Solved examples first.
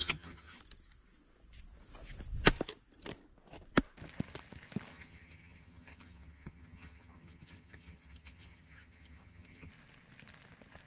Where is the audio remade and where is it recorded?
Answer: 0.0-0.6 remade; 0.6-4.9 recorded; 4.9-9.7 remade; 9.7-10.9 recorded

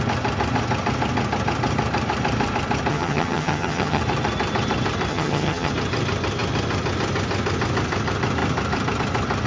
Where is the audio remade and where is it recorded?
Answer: 0.0-2.9 recorded; 2.9-4.0 remade; 4.0-5.1 recorded; 5.1-5.7 remade; 5.7-9.5 recorded

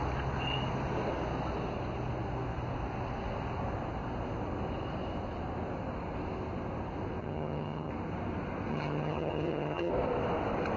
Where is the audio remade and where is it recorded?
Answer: 0.0-7.2 recorded; 7.2-7.9 remade; 7.9-8.7 recorded; 8.7-9.9 remade; 9.9-10.8 recorded